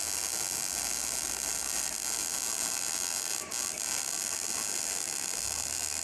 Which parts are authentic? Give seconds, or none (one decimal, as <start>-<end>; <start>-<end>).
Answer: 0.0-6.0